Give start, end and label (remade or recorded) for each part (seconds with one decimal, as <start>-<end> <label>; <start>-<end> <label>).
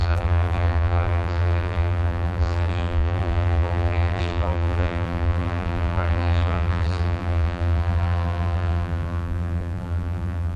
0.0-10.6 remade